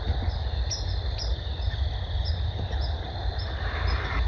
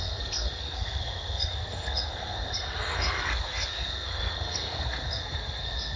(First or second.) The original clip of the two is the first